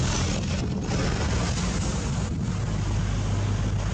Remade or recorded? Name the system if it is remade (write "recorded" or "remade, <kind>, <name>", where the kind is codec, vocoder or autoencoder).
recorded